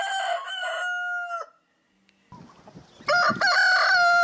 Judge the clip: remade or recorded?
recorded